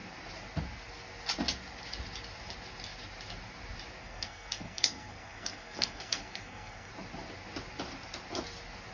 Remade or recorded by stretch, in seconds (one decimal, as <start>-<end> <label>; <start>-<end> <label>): 0.0-4.0 recorded; 4.0-6.9 remade; 6.9-8.9 recorded